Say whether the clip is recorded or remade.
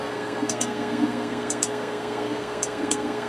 remade